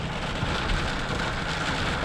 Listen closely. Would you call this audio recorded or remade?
recorded